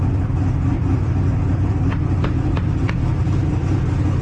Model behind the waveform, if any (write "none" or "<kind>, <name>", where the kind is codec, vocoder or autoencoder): none